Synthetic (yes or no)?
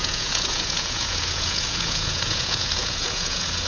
yes